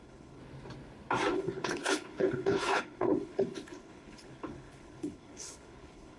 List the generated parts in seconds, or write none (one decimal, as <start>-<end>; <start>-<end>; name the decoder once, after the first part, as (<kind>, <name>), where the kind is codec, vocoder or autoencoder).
0.0-0.4 (codec, HILCodec); 1.3-6.2